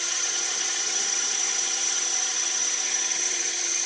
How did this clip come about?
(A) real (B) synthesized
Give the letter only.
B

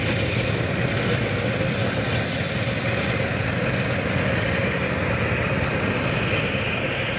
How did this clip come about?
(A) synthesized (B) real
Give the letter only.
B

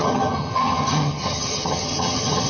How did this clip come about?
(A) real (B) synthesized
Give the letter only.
B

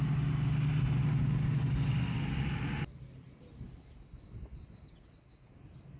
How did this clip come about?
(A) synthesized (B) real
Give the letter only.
B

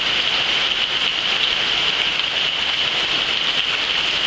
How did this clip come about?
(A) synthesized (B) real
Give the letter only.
B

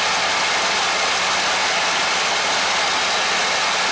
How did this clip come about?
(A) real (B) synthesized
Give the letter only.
A